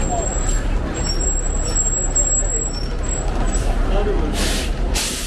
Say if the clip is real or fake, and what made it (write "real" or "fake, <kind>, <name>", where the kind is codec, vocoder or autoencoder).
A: real